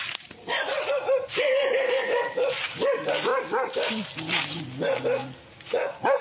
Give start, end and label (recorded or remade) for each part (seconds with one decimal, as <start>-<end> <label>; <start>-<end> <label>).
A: 0.0-5.5 recorded; 5.5-6.2 remade

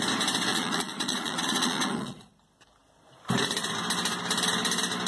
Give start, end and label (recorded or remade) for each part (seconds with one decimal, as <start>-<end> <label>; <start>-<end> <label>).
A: 0.0-0.5 recorded; 0.5-2.3 remade; 2.3-5.1 recorded